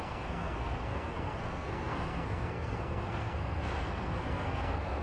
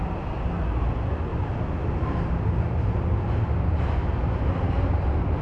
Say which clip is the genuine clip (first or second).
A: second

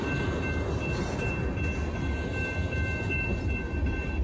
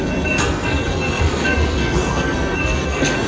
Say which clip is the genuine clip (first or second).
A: first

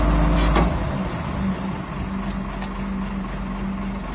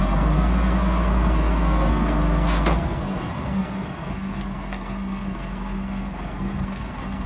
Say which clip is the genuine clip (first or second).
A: first